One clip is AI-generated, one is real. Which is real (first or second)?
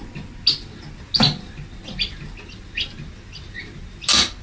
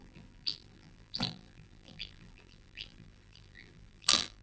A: first